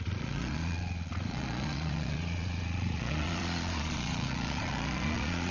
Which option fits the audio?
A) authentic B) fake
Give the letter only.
B